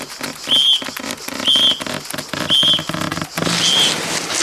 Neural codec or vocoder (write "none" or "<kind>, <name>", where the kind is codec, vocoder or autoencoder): none